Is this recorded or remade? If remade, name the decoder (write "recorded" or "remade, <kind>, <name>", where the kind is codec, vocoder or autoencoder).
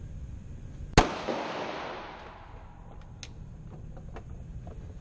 recorded